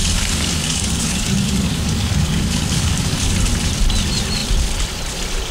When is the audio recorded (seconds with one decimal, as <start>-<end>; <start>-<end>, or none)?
3.3-5.5